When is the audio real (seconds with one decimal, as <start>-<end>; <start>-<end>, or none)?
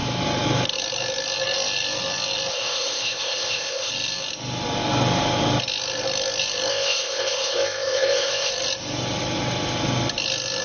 0.0-2.5; 3.9-6.7; 8.5-10.6